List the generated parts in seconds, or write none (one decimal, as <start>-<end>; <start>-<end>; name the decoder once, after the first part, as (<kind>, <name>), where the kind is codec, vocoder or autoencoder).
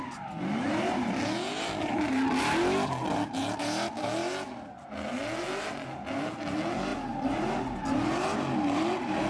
6.9-7.5 (vocoder, BigVGAN v2)